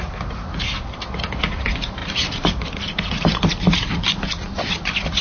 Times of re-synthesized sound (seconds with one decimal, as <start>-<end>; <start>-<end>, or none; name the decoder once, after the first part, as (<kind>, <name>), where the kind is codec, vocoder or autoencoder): none